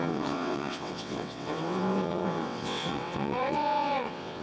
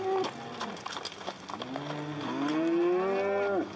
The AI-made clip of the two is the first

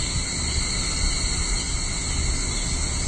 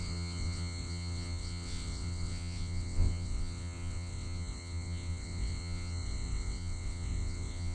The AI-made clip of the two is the second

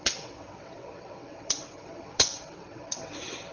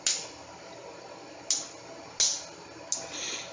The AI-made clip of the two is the first